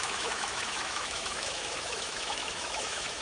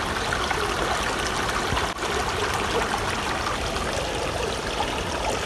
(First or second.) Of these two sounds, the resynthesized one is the first